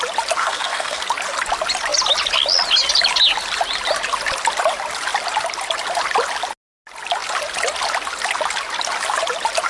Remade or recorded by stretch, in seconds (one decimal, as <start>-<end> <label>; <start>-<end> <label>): 0.0-0.4 recorded; 0.4-1.0 remade; 1.0-9.7 recorded